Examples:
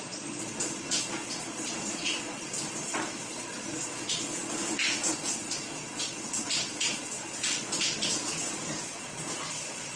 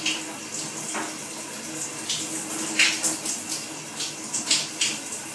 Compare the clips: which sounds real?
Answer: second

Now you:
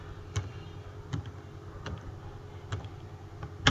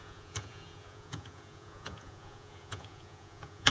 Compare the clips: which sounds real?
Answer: first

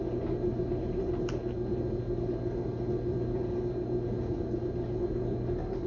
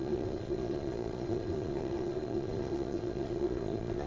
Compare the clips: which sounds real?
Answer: first